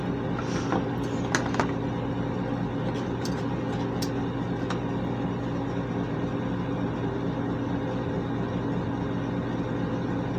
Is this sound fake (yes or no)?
no